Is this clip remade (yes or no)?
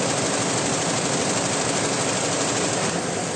no